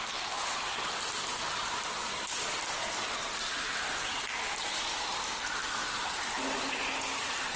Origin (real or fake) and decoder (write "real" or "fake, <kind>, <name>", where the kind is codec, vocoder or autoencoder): real